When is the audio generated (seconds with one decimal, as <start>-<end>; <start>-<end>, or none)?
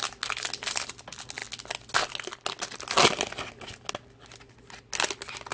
none